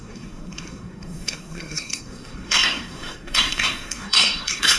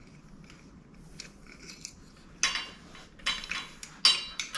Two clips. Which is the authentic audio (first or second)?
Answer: second